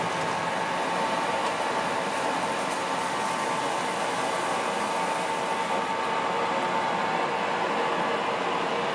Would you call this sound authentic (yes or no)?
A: yes